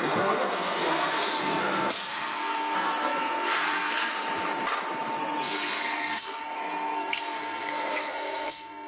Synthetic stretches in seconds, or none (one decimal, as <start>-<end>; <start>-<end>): 0.0-4.1; 5.2-8.9